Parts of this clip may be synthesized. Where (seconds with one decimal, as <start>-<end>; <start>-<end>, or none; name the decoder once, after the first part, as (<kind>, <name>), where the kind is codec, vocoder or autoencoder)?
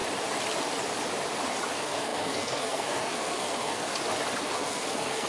1.7-3.9 (codec, SNAC); 4.4-5.3